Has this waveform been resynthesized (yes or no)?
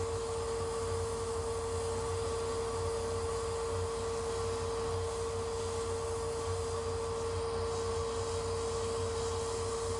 no